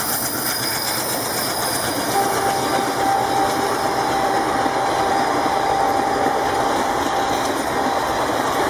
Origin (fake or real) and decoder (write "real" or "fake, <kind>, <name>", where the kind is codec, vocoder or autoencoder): real